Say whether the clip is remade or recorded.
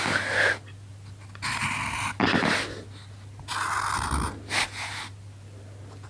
recorded